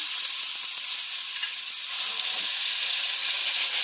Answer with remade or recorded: remade